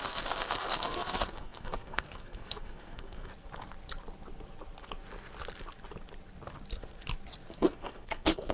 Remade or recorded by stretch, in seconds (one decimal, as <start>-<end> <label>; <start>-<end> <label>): 0.0-3.3 remade; 3.3-7.5 recorded; 7.5-8.5 remade